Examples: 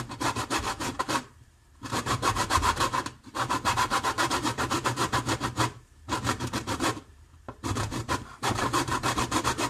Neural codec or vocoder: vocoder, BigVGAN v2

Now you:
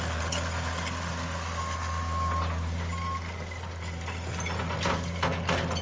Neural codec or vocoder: none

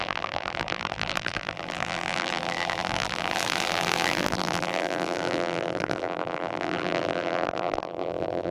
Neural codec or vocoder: vocoder, BigVGAN v2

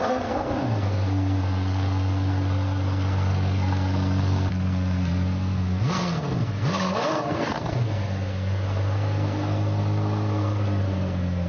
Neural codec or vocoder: codec, SNAC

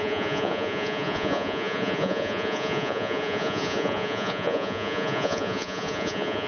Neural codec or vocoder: vocoder, Vocos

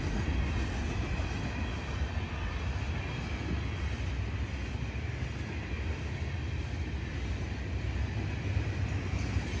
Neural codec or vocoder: none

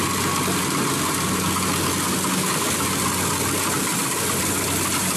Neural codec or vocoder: none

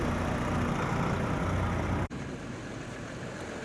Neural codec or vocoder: vocoder, BigVGAN v2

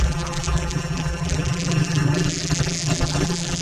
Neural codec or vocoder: vocoder, BigVGAN v2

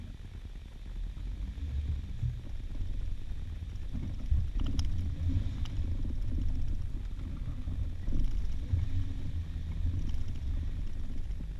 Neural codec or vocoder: none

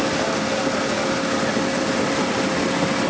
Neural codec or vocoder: none